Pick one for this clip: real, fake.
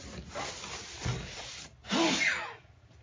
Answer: real